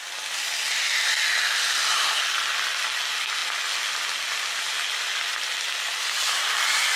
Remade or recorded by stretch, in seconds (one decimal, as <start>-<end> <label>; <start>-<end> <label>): 0.0-7.0 recorded